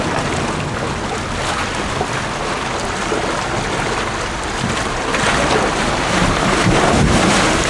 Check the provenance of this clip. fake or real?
real